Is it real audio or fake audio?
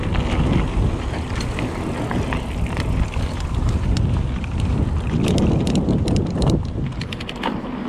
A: real